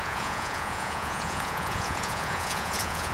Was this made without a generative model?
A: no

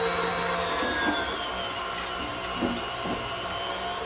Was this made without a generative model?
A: yes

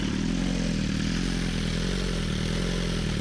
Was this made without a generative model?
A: yes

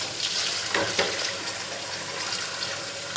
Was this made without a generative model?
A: yes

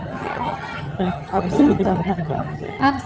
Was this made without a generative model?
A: no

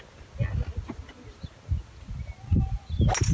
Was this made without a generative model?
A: yes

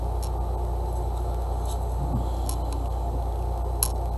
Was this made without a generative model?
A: yes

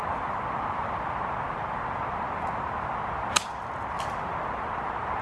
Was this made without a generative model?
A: yes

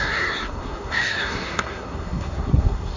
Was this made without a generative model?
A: no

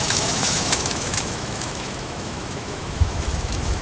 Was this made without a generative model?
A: no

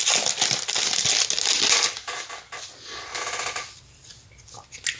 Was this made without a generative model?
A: yes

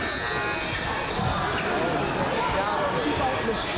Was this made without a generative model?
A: yes